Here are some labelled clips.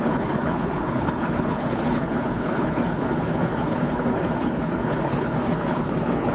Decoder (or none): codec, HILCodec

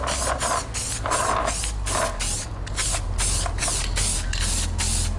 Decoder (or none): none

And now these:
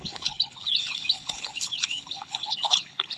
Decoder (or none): codec, HILCodec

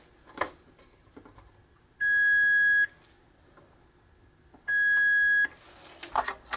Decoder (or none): none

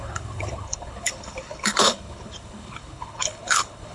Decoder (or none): codec, HILCodec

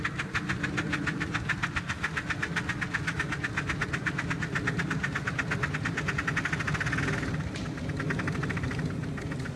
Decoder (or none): none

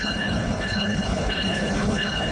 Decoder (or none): codec, HILCodec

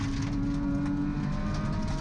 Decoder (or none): none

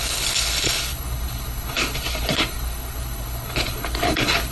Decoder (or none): codec, HILCodec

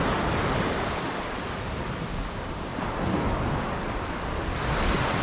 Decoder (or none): none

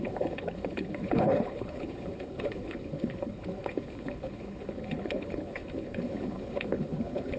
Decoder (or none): codec, HILCodec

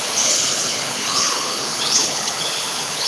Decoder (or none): codec, HILCodec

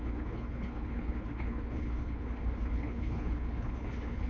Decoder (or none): codec, HILCodec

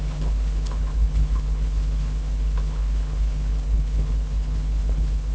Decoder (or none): codec, HILCodec